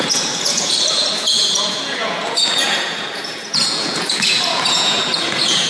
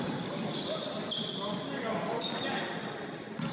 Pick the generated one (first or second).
first